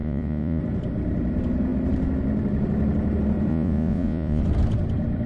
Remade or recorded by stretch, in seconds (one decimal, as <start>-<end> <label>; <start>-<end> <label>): 0.0-0.6 remade; 0.6-3.5 recorded; 3.5-4.4 remade; 4.4-5.3 recorded